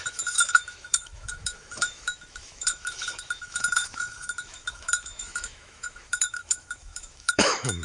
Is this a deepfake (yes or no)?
yes